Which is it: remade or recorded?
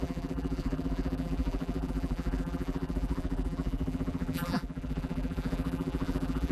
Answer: remade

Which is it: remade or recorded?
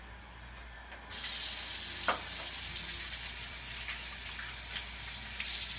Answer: recorded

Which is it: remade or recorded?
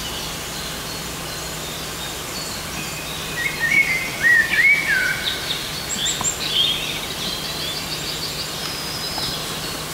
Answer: recorded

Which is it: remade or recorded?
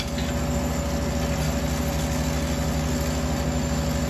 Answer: recorded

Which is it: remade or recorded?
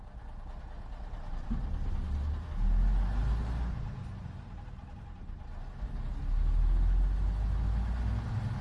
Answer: recorded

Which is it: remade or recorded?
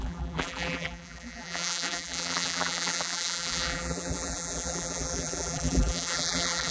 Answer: remade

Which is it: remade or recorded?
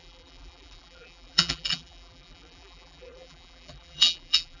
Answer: remade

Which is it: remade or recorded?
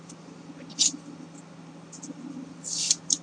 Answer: remade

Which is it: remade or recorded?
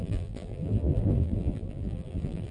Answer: remade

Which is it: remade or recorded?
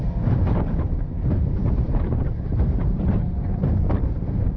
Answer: remade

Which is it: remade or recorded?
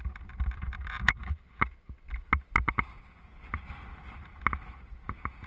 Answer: recorded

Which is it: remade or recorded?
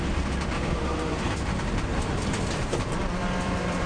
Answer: remade